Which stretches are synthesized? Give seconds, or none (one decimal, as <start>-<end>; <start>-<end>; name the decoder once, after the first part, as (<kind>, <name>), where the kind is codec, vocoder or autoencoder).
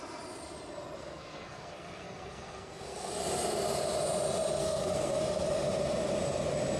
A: 1.0-3.1 (codec, SNAC); 4.6-5.2